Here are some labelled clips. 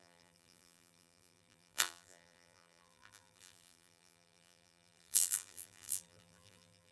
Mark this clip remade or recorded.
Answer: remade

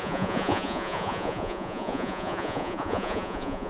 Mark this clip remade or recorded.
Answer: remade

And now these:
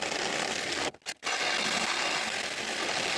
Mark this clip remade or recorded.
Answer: recorded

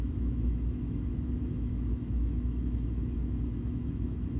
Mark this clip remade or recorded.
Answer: remade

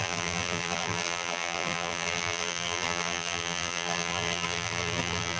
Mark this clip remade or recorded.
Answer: remade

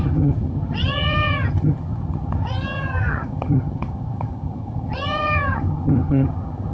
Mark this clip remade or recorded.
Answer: remade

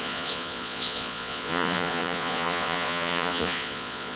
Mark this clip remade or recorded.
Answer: remade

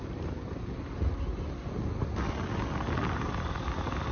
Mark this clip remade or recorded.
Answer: recorded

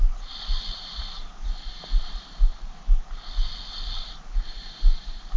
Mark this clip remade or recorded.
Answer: recorded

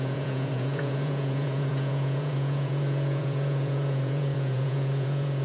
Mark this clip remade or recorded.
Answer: remade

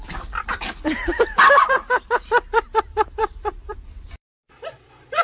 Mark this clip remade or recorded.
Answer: remade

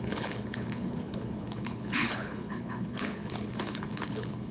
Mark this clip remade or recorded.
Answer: remade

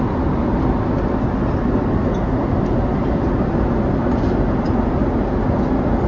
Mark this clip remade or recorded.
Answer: recorded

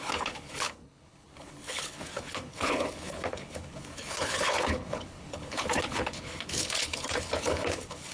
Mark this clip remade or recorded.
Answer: remade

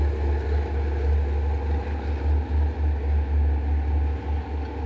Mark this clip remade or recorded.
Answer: recorded